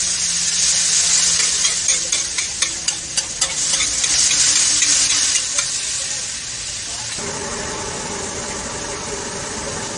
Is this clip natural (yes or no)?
yes